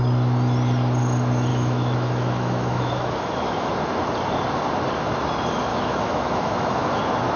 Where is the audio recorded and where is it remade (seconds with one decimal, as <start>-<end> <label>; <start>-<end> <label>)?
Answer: 0.0-1.5 recorded; 1.5-3.7 remade; 3.7-5.7 recorded; 5.7-7.0 remade; 7.0-7.4 recorded